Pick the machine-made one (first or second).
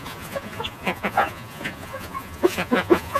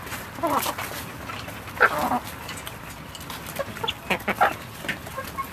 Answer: first